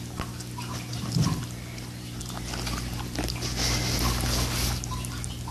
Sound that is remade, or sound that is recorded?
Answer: recorded